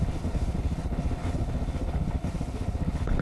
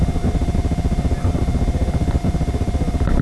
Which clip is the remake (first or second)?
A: first